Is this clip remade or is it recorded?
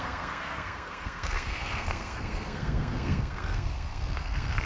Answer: remade